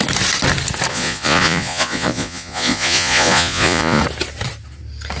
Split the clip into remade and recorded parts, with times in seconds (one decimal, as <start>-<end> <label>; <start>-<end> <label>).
0.0-0.9 recorded; 0.9-4.0 remade; 4.0-5.2 recorded